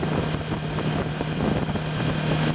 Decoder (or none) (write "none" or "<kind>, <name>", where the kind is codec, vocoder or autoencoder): none